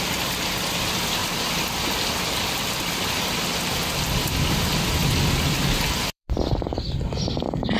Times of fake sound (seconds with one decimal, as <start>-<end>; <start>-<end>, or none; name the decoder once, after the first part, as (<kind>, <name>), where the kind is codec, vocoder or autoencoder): 5.0-6.4 (vocoder, BigVGAN v2)